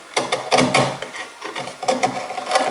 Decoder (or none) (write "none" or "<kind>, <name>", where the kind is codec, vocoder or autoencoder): none